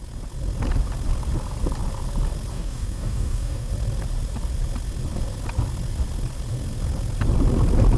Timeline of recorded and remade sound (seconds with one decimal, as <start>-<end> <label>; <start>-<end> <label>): 0.0-2.5 recorded; 2.5-3.7 remade; 3.7-8.0 recorded